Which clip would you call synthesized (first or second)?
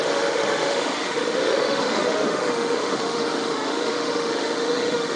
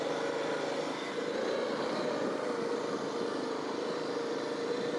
first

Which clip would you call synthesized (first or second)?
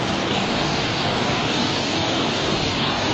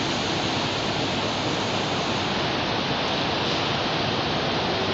first